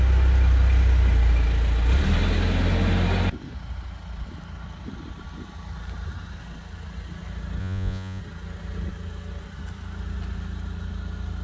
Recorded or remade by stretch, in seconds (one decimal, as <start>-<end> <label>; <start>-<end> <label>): 0.0-7.6 recorded; 7.6-8.2 remade; 8.2-11.4 recorded